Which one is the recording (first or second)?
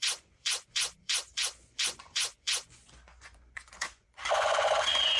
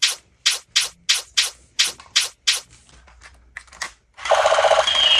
second